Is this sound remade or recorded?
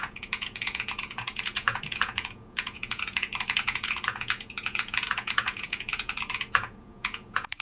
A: remade